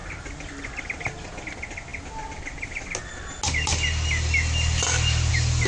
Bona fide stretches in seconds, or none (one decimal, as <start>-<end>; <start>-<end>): 0.0-5.7